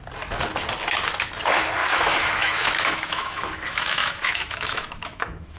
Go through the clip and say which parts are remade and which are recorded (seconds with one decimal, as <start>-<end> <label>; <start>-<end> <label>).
0.0-1.8 recorded; 1.8-5.6 remade